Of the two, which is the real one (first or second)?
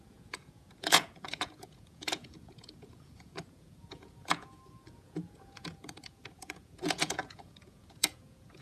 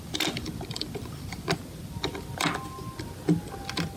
second